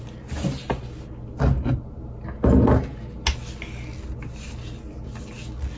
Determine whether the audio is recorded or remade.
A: recorded